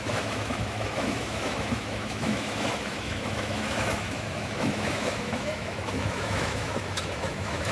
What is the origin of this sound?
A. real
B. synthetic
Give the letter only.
B